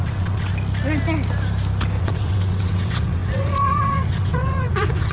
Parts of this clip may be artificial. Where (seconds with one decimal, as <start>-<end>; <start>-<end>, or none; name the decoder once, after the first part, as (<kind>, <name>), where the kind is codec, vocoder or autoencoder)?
0.0-0.5 (vocoder, WaveNeXt); 2.0-5.1